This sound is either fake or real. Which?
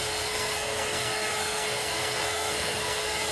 fake